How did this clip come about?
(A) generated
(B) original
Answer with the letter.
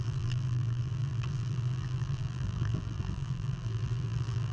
A